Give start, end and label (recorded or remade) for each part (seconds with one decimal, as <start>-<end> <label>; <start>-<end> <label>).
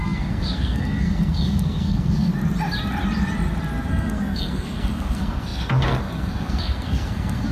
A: 0.0-2.3 remade; 2.3-3.9 recorded; 3.9-7.5 remade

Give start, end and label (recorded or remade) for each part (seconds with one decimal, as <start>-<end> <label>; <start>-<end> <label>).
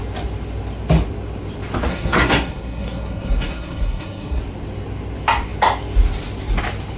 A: 0.0-1.9 recorded; 1.9-4.4 remade; 4.4-7.0 recorded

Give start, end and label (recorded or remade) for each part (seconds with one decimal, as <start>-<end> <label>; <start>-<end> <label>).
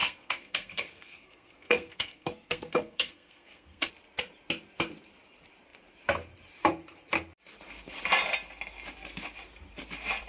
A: 0.0-3.9 remade; 3.9-10.3 recorded